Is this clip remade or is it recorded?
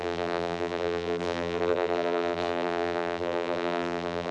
remade